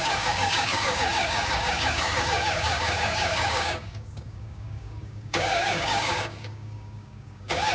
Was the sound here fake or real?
fake